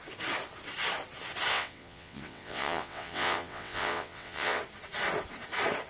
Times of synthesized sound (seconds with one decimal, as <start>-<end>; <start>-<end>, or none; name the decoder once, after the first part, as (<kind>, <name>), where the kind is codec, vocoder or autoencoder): 1.5-4.6 (vocoder, WaveNeXt)